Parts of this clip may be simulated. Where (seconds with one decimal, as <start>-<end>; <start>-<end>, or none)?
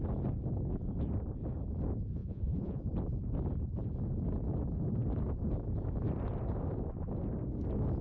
2.2-2.8